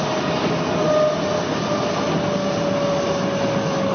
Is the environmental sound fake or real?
real